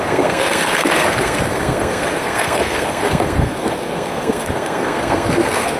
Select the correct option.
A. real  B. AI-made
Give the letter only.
B